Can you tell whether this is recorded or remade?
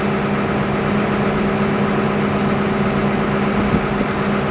recorded